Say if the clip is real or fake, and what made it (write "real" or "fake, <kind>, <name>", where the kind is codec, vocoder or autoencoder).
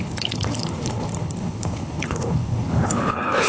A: fake, codec, HILCodec